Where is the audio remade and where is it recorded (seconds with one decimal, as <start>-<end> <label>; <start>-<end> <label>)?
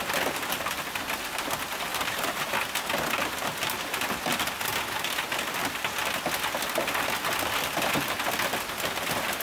0.0-1.9 recorded; 1.9-2.5 remade; 2.5-9.4 recorded